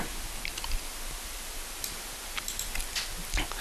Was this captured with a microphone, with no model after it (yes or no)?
yes